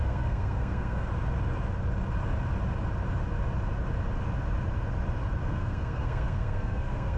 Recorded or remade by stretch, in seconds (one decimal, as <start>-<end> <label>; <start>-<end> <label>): 0.0-1.1 remade; 1.1-5.4 recorded; 5.4-7.2 remade